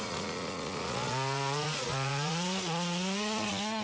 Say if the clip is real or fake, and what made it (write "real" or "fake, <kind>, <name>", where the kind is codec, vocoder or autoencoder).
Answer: fake, vocoder, Vocos